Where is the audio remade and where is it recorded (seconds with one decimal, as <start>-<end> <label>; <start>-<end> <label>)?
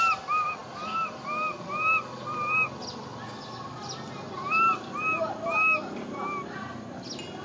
0.0-7.4 recorded